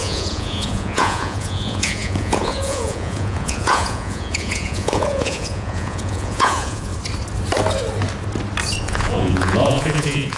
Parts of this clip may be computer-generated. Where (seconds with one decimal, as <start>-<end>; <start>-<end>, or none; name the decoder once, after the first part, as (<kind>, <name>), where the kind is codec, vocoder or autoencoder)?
0.0-6.9 (vocoder, Vocos); 8.8-10.4